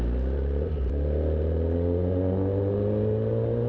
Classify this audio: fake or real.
real